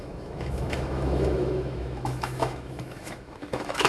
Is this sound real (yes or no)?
no